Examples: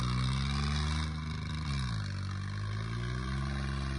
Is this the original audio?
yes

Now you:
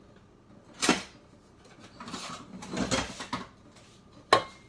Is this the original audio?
yes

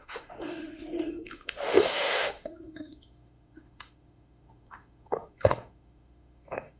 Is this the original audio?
no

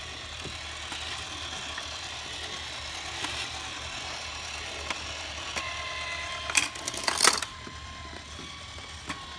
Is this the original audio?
yes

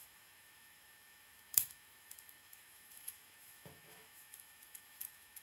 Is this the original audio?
no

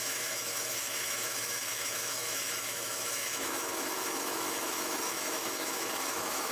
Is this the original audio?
no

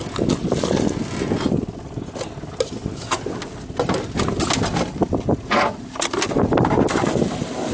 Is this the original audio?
yes